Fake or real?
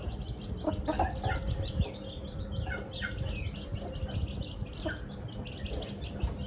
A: real